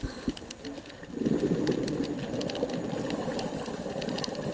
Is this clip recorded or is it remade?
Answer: recorded